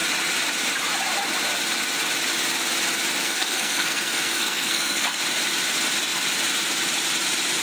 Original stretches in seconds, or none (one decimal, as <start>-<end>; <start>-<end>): 0.0-3.2; 5.2-7.6